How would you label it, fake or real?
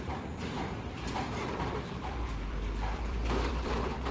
fake